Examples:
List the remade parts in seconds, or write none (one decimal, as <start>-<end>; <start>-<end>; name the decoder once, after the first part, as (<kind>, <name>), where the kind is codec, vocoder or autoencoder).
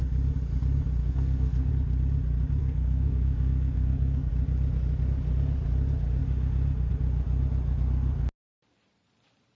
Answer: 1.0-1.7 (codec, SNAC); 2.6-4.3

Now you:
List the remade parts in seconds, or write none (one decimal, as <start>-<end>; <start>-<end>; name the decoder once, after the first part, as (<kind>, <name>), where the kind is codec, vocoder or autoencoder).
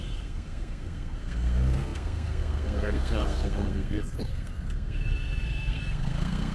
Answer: 0.0-6.5 (codec, SNAC)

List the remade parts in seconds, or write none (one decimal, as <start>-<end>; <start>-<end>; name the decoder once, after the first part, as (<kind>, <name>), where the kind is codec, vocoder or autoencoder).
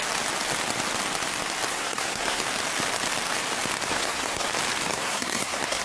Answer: 1.7-2.4 (codec, SNAC); 3.9-4.5; 4.9-5.8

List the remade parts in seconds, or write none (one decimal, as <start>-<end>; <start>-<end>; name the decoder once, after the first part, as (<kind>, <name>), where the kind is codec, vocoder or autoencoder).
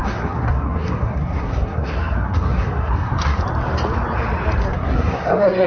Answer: 0.0-3.4 (codec, SNAC); 4.7-5.7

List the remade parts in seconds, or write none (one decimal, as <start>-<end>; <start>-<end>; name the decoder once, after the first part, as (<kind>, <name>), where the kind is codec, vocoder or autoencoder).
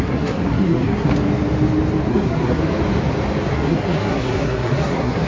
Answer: 0.0-1.1 (codec, SNAC); 2.1-2.6; 3.5-5.3